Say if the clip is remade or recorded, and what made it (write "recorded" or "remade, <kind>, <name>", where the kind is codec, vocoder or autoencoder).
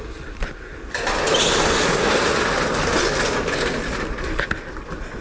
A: recorded